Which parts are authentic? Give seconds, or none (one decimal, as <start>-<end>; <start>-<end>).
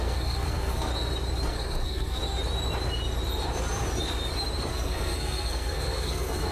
0.9-1.5; 2.2-4.7